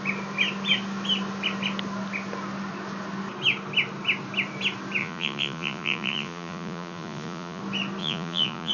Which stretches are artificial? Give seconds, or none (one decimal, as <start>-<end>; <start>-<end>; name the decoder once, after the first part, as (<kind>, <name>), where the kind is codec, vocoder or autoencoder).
5.0-7.6 (vocoder, Vocos); 8.0-8.7